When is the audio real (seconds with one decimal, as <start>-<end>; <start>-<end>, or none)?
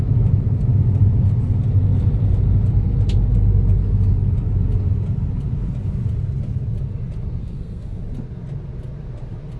0.0-7.4; 8.0-9.6